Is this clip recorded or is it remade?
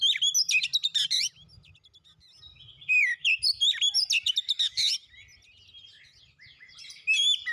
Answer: recorded